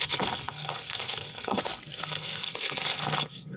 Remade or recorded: remade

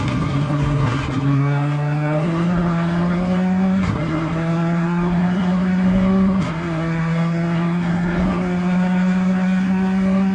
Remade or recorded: remade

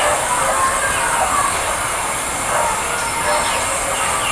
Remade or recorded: recorded